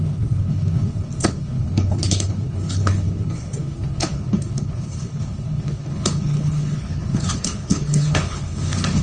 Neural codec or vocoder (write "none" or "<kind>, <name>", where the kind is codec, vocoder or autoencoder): codec, HILCodec